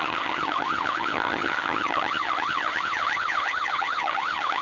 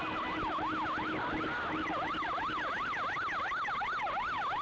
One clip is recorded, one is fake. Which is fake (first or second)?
first